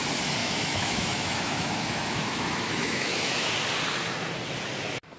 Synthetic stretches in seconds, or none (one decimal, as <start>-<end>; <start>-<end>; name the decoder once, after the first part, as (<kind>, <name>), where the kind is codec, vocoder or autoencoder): 0.4-3.5 (autoencoder, DAC-VAE)